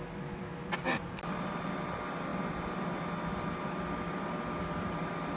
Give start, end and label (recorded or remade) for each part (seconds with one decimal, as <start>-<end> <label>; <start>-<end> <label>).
0.0-5.4 recorded